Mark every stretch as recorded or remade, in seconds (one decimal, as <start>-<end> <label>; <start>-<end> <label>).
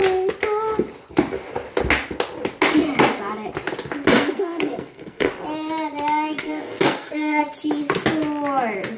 0.0-4.1 recorded; 4.1-5.3 remade; 5.3-6.4 recorded; 6.4-7.4 remade; 7.4-9.0 recorded